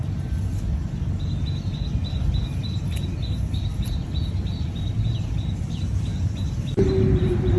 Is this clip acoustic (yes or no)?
yes